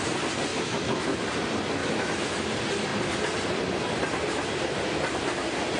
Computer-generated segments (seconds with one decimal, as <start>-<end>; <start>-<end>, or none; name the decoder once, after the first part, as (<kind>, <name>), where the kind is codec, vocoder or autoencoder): 0.5-1.2 (autoencoder, DAC-VAE); 1.8-2.5

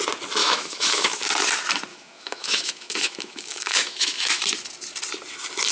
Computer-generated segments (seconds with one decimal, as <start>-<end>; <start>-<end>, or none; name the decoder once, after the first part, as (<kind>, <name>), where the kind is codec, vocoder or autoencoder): 0.4-1.3 (autoencoder, DAC-VAE); 1.9-4.4

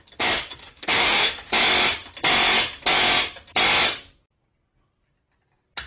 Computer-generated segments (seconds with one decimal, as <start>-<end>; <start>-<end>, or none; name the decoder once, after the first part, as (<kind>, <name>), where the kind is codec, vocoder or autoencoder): 0.6-1.5 (autoencoder, DAC-VAE)

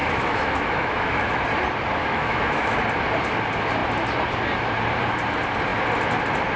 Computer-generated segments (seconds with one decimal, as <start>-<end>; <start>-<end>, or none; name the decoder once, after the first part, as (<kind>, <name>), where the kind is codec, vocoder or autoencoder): 0.0-1.4 (autoencoder, DAC-VAE); 2.0-2.8

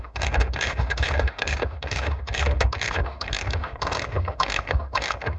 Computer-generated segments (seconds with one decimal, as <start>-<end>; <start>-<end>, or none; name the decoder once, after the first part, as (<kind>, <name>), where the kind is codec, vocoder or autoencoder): 0.0-5.4 (autoencoder, DAC-VAE)

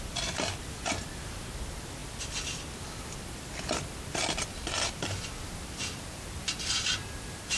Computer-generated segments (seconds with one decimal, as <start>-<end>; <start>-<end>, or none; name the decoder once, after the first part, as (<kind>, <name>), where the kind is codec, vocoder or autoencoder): none

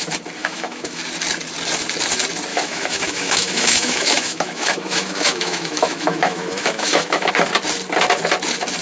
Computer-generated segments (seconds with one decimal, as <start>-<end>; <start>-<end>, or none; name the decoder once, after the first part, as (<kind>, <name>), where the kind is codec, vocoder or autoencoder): 0.4-1.0 (autoencoder, DAC-VAE); 2.5-7.3